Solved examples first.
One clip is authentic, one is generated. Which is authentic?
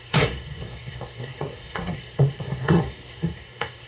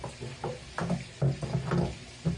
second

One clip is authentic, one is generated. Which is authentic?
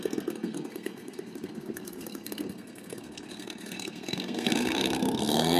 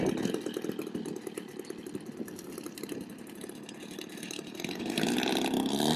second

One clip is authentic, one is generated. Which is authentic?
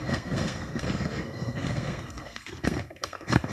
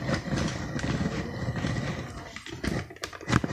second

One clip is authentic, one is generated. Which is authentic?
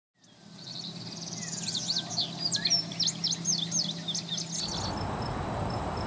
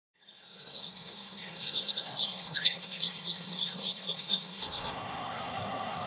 first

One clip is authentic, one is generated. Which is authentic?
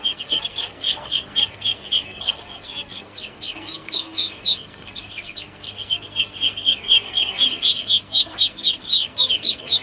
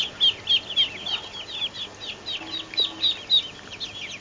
second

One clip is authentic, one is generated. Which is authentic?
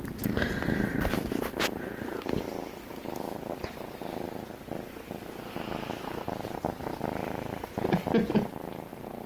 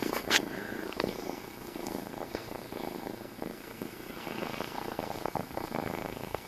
first